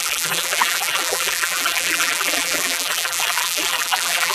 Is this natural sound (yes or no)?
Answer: no